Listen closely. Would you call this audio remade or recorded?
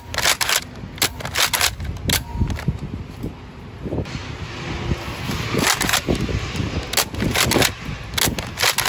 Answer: recorded